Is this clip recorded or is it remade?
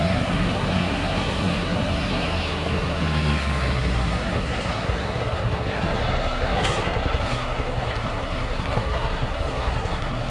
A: remade